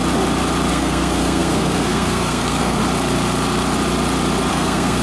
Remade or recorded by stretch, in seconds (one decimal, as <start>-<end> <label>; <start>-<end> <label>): 0.0-0.7 recorded; 0.7-2.8 remade; 2.8-4.5 recorded; 4.5-5.0 remade